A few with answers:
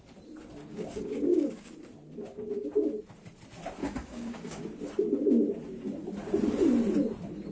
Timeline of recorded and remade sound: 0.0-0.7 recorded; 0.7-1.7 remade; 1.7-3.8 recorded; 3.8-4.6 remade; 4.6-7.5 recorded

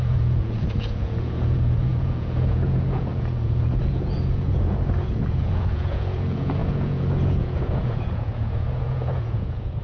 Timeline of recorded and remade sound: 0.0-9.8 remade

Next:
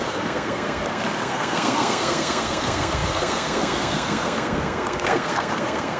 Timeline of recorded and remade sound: 0.0-6.0 remade

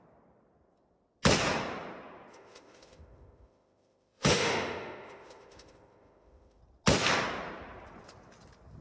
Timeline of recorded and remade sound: 0.0-2.3 recorded; 2.3-6.6 remade; 6.6-8.8 recorded

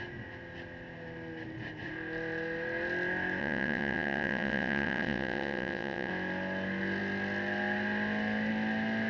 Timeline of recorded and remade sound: 0.0-3.4 recorded; 3.4-6.1 remade; 6.1-9.1 recorded